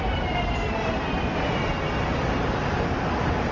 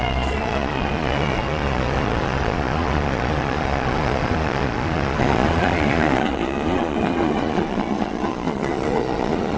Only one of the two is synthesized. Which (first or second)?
second